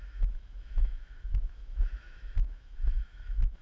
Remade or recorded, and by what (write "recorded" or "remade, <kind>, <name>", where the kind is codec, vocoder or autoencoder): remade, autoencoder, DAC-VAE